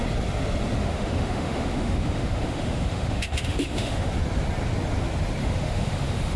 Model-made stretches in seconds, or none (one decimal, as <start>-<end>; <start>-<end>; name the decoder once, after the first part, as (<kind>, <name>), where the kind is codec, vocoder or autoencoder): 0.8-4.1 (autoencoder, DAC-VAE); 5.4-6.4

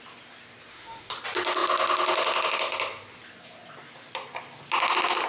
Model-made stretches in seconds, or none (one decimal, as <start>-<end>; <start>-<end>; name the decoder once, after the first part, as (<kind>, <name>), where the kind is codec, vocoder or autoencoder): 0.7-1.2 (autoencoder, DAC-VAE)

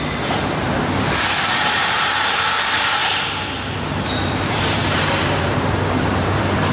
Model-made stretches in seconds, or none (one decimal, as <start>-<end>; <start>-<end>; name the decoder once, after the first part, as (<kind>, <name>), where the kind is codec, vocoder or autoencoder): 1.6-2.1 (vocoder, BigVGAN v2); 3.0-6.7

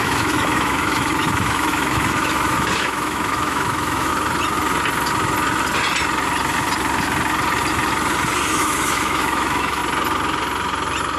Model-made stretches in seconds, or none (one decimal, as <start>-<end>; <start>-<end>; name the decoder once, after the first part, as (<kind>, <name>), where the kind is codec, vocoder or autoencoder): 0.0-4.1 (autoencoder, DAC-VAE); 8.6-9.8

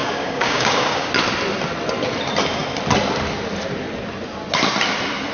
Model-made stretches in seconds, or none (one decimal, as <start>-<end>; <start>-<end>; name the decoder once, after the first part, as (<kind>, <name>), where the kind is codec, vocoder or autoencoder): 0.0-1.1 (codec, DAC)

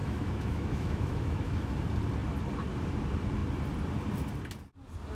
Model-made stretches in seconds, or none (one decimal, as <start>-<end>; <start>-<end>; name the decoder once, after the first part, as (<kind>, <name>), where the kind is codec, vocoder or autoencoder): 0.0-1.7 (autoencoder, DAC-VAE)

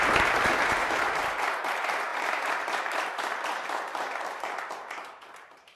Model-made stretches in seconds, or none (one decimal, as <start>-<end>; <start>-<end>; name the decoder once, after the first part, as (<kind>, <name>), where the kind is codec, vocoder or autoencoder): 0.0-5.8 (vocoder, BigVGAN v2)

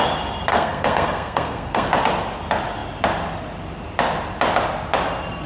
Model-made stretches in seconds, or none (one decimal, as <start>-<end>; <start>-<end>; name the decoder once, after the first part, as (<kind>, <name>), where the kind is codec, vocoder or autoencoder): 0.5-1.9 (codec, SNAC)